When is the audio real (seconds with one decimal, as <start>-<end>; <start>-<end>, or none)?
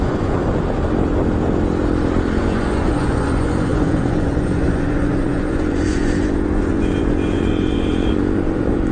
0.4-2.4